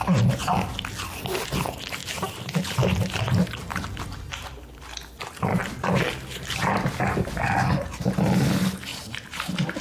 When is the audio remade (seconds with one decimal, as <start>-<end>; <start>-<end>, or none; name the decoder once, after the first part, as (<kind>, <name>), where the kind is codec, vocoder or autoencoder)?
2.0-4.9 (vocoder, BigVGAN v2); 5.5-7.0; 8.9-9.8